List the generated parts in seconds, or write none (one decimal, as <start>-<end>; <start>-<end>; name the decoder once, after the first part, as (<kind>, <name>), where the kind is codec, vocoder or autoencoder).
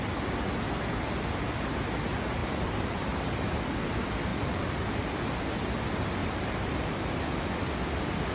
2.4-3.6 (vocoder, BigVGAN v2); 4.3-4.9; 6.2-7.1